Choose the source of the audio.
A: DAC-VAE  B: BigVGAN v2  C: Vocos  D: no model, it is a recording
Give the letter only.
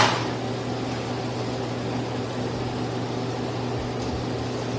D